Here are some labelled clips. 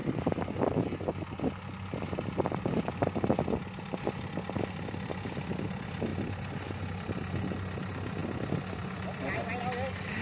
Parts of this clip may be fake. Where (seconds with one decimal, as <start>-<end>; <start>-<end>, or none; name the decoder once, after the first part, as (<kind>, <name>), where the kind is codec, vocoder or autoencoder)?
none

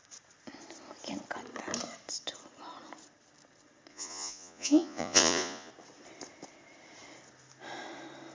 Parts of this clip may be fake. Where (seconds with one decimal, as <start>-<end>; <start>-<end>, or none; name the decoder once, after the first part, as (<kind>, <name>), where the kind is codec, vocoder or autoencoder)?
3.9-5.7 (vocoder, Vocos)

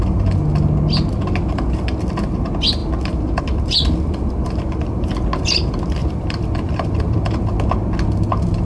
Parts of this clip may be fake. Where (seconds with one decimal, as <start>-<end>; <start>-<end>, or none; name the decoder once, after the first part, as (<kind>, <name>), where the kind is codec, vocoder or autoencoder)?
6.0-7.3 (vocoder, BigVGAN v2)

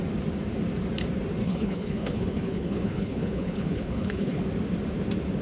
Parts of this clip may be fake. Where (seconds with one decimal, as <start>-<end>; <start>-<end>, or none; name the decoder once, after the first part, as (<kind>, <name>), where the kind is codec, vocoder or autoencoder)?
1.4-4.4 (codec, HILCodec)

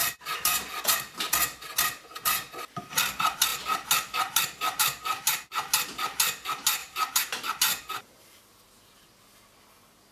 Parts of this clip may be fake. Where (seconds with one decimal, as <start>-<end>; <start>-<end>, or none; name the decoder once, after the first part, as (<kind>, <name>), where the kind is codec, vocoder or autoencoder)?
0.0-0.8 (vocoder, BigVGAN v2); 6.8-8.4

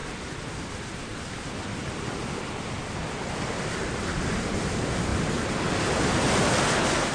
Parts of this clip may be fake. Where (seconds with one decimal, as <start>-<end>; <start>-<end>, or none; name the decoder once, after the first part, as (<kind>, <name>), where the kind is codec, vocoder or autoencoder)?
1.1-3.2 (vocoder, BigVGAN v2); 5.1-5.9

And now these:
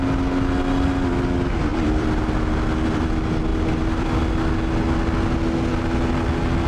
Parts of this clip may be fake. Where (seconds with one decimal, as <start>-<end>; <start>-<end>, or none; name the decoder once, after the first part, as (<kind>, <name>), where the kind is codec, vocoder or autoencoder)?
1.7-2.5 (vocoder, BigVGAN v2); 3.5-4.4